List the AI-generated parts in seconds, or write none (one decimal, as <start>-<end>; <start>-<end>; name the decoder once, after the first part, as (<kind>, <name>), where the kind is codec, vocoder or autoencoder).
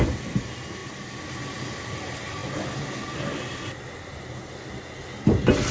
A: none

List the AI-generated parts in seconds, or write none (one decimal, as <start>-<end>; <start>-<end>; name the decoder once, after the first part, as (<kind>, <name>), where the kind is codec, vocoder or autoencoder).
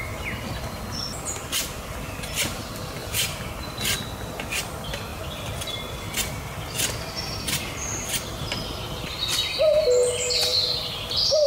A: 3.0-3.5 (vocoder, BigVGAN v2); 10.5-11.0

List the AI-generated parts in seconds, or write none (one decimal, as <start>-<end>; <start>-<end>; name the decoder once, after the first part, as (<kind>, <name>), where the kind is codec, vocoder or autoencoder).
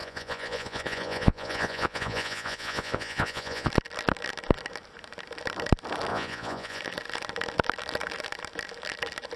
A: 0.0-3.7 (vocoder, Vocos); 6.1-6.8